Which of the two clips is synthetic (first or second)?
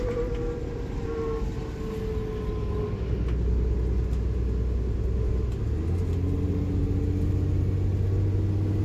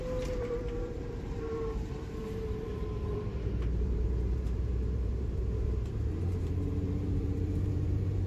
second